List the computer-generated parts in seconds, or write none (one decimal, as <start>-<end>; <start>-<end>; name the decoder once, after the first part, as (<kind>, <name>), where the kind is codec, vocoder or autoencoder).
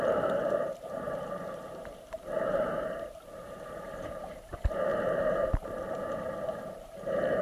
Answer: 0.0-7.4 (vocoder, BigVGAN v2)